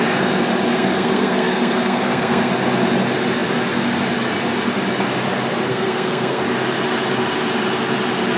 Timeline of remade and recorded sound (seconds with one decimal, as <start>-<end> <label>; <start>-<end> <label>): 0.0-0.7 recorded; 0.7-2.5 remade; 2.5-5.7 recorded; 5.7-6.4 remade; 6.4-8.4 recorded